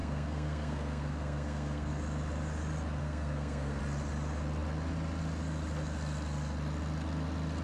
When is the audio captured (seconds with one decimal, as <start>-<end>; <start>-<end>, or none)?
1.9-3.0; 3.8-7.6